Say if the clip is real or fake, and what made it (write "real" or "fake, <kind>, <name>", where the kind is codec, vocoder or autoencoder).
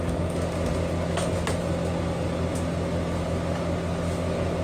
real